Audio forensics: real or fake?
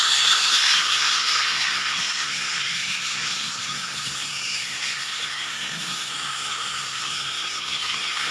fake